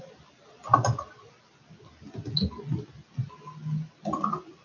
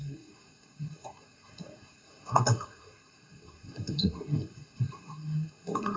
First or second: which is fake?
second